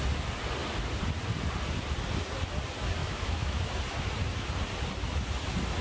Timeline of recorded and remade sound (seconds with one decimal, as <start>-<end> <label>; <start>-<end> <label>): 0.0-3.0 recorded; 3.0-3.7 remade; 3.7-5.8 recorded